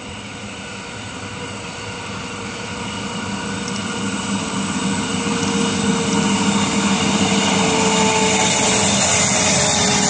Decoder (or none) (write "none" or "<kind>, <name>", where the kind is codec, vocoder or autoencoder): none